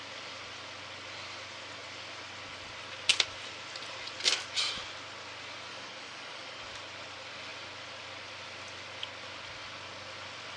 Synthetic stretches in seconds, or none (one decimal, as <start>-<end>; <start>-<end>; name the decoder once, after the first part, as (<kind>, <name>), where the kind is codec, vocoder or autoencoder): 5.7-6.6 (codec, DAC)